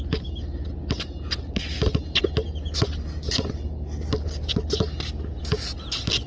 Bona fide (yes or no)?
yes